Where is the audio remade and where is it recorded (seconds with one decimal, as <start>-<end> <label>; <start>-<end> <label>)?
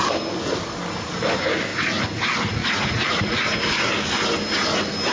0.0-2.6 recorded; 2.6-3.4 remade; 3.4-5.1 recorded